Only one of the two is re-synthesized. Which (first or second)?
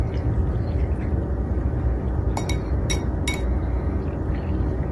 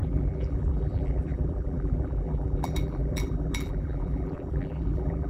second